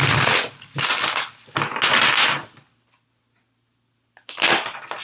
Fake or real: real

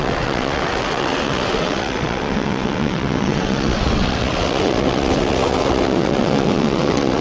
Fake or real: fake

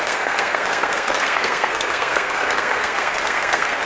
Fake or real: fake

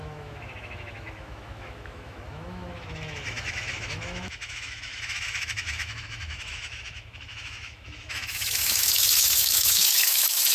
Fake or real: fake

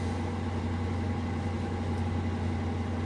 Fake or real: real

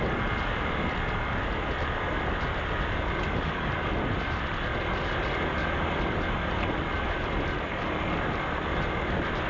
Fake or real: real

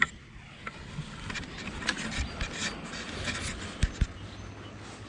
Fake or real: real